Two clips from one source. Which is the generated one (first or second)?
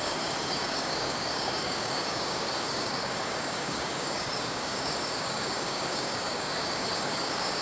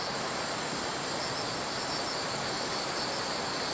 first